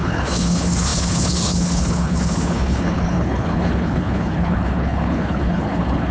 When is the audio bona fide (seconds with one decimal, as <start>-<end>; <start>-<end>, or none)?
none

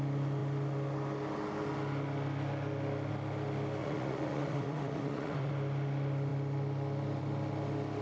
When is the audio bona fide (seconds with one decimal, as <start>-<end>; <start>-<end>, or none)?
0.0-3.8; 5.5-8.0

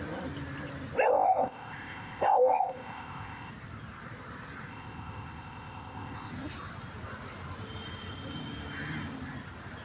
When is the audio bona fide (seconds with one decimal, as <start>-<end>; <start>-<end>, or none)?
0.0-1.1; 3.5-4.7; 6.3-9.8

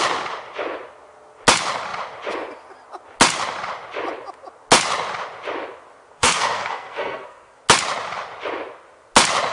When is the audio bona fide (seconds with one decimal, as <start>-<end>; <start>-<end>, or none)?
0.0-6.1; 7.6-9.5